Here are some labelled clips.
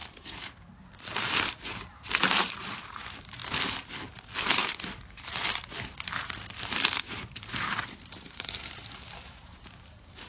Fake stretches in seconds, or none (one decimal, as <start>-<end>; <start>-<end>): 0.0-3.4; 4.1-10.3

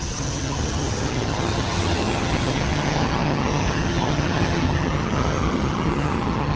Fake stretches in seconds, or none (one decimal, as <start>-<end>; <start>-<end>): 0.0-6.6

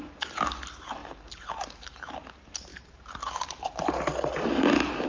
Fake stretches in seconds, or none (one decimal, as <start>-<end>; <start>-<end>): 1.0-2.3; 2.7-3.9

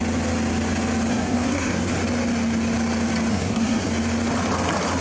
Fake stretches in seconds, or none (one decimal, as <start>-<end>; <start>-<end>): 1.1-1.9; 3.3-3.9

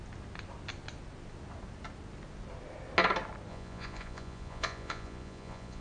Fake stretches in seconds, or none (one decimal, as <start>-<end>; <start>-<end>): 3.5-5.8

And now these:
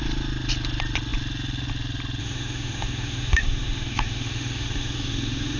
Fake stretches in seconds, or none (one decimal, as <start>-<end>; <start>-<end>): 2.2-5.6